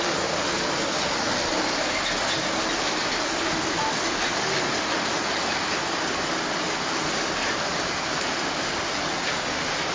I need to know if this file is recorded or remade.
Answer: recorded